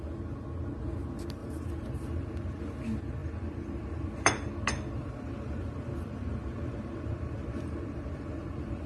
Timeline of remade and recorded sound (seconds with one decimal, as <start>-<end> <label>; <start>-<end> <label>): 0.0-1.4 recorded; 1.4-2.6 remade; 2.6-3.2 recorded; 3.2-4.5 remade; 4.5-5.0 recorded; 5.0-8.9 remade